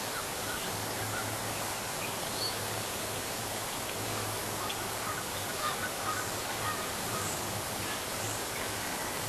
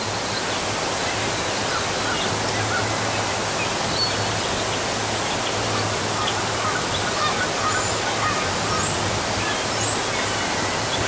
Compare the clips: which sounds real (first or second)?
second